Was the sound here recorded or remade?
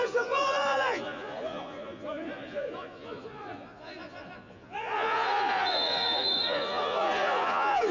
remade